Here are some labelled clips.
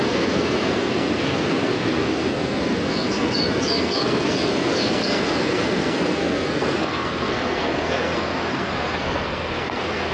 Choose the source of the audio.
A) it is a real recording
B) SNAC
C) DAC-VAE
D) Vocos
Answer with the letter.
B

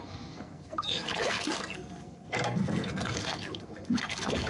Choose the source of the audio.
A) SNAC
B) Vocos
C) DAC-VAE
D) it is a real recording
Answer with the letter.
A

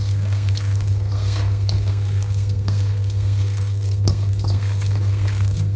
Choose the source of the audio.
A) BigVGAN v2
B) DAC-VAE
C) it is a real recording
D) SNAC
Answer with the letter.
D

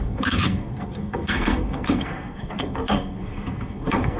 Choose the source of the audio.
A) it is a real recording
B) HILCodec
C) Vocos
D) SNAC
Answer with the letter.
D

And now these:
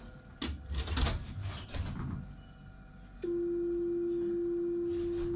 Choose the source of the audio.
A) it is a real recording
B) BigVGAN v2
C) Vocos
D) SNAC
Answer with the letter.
A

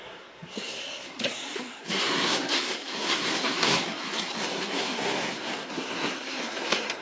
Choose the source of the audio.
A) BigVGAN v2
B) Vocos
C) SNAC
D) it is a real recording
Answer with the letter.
C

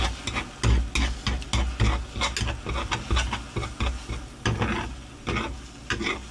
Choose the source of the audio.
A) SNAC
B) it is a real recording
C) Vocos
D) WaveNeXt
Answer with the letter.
B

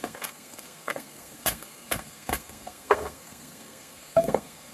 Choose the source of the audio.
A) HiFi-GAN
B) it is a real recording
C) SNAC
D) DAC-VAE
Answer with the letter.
C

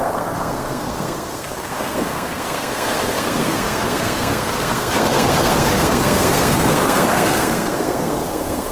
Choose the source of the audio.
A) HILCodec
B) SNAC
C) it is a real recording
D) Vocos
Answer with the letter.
B